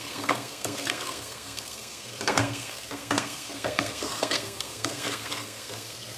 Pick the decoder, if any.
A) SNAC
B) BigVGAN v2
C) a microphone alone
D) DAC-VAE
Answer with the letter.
A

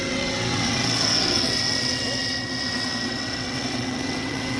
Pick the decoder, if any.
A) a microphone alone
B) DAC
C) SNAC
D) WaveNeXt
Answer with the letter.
D